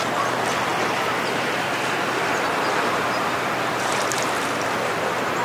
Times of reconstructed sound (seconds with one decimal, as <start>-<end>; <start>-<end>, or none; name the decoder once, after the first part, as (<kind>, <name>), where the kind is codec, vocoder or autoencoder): none